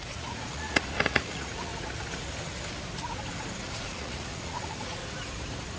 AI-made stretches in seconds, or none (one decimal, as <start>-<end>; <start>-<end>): 0.0-1.7; 3.6-5.0